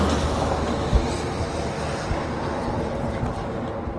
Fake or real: real